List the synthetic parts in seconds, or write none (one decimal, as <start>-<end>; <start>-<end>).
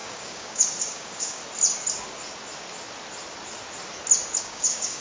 0.0-1.4; 4.4-5.0